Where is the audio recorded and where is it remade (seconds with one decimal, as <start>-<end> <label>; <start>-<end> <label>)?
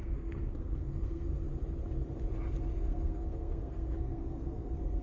0.0-1.3 remade; 1.3-2.7 recorded; 2.7-5.0 remade